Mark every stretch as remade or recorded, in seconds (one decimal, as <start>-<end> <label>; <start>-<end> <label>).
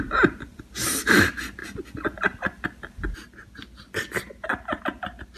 0.0-5.4 recorded